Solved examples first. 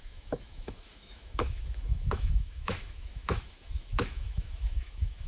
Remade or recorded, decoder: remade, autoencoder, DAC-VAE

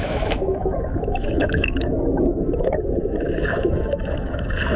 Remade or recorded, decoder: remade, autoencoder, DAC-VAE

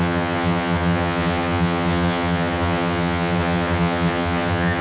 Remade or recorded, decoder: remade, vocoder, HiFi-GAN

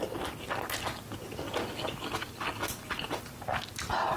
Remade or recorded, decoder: recorded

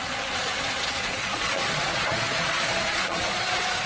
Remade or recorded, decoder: remade, vocoder, Vocos